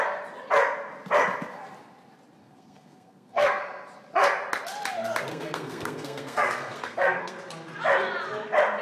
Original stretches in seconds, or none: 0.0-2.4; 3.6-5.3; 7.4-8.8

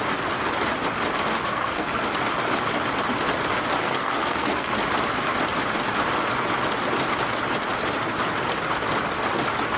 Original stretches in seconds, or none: 0.0-1.3; 2.0-3.8; 4.7-9.8

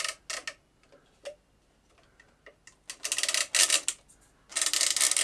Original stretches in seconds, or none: 0.0-5.2

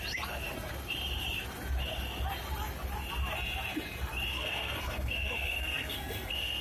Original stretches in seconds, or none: 0.0-4.3

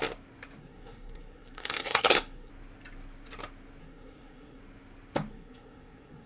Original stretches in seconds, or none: 0.0-0.6; 2.5-3.8; 4.6-5.3

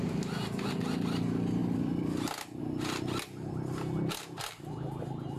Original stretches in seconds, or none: 0.0-5.4